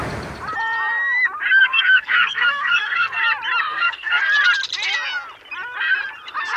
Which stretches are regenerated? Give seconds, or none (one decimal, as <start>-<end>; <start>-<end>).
1.6-3.2; 3.7-4.2